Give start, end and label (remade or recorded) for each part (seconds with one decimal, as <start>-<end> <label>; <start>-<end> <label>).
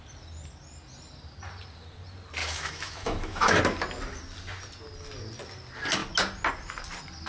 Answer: 0.0-2.4 recorded; 2.4-3.6 remade; 3.6-7.3 recorded